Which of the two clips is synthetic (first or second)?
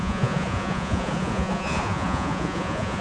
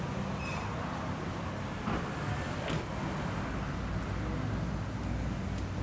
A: first